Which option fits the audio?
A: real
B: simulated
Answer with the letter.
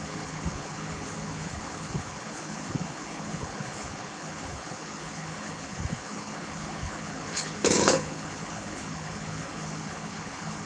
B